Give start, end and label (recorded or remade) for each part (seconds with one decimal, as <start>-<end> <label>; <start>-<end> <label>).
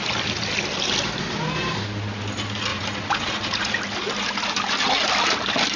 0.0-2.7 recorded; 2.7-3.7 remade; 3.7-5.8 recorded